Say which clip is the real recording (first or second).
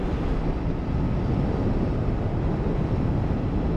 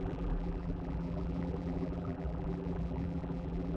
first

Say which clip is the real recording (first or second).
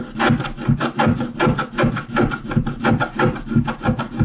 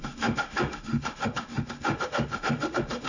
first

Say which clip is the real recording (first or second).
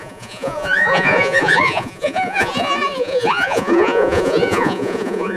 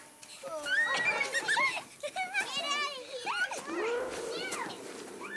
second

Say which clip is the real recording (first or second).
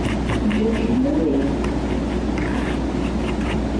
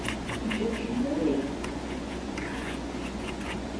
first